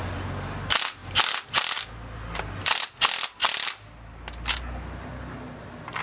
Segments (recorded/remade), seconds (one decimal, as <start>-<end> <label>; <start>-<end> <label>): 0.0-6.0 recorded

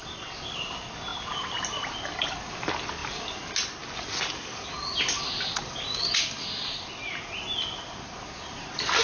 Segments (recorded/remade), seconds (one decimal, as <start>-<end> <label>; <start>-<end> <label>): 0.0-9.0 recorded

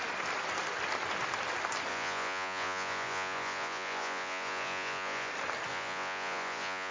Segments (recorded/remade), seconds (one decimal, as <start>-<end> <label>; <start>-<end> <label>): 0.0-1.9 recorded; 1.9-5.3 remade; 5.3-5.7 recorded; 5.7-6.9 remade

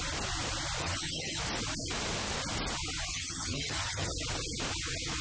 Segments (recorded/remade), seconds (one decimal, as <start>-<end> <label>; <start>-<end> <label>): 0.0-0.8 recorded; 0.8-1.4 remade; 1.4-3.1 recorded; 3.1-4.1 remade; 4.1-5.2 recorded

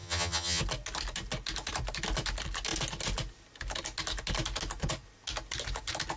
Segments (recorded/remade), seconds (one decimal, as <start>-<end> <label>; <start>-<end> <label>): 0.0-0.6 remade; 0.6-6.2 recorded

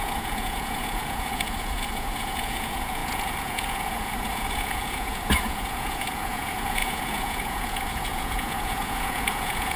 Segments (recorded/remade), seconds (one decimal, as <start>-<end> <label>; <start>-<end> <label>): 0.0-9.8 remade